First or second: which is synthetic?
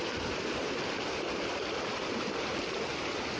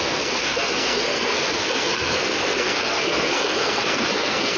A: second